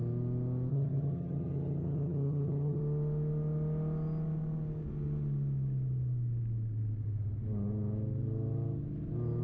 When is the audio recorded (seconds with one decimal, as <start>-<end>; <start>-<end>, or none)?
0.0-0.7; 2.8-9.4